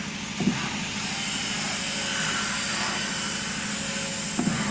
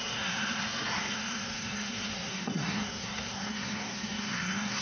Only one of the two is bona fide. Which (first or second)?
first